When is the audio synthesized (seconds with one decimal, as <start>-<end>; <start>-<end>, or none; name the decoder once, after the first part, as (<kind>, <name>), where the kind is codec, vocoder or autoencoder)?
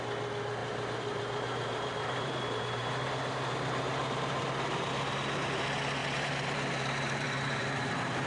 0.6-5.6 (vocoder, BigVGAN v2); 6.0-8.3